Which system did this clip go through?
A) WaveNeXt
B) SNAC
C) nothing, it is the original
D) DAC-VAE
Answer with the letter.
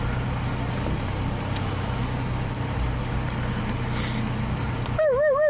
C